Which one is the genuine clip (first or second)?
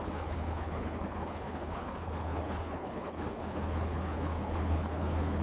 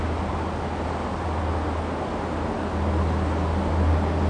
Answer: second